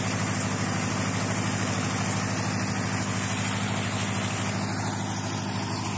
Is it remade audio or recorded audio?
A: recorded